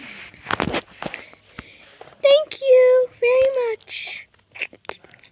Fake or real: real